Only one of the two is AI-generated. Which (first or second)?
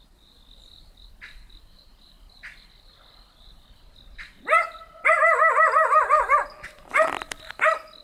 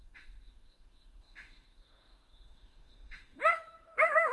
second